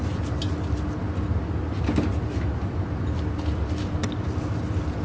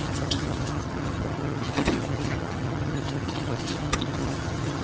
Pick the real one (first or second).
first